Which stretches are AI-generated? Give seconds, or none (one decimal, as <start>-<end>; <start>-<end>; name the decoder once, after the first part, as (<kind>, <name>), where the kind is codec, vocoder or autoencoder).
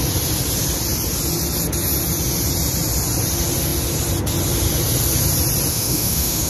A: 5.7-6.5 (autoencoder, DAC-VAE)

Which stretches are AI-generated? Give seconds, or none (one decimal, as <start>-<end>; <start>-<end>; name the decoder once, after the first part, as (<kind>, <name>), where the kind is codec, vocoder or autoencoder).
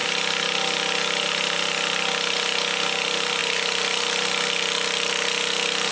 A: none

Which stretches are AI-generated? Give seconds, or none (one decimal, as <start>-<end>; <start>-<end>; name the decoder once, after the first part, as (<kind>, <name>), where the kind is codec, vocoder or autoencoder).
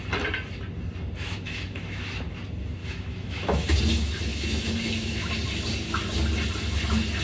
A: 1.2-2.0 (autoencoder, DAC-VAE); 2.8-3.8; 4.3-5.3